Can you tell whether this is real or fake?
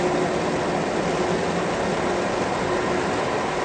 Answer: real